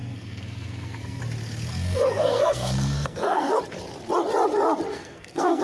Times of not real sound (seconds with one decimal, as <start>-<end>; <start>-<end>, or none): 0.0-1.2; 1.7-3.6; 4.9-5.6